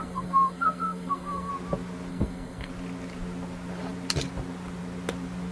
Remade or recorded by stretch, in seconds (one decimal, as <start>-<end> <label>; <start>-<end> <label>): 0.0-1.5 remade; 1.5-2.1 recorded; 2.1-2.7 remade; 2.7-5.5 recorded